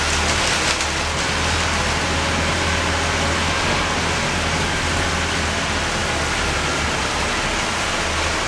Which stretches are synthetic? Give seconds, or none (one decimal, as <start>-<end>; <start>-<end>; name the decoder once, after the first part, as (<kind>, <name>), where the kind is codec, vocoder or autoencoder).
none